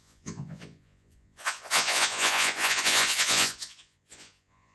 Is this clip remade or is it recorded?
remade